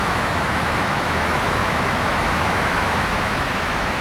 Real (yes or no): no